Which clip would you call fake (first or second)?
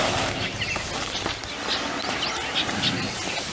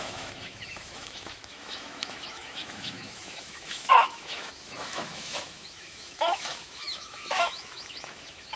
second